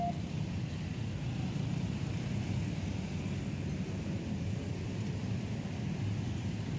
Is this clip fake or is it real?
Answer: real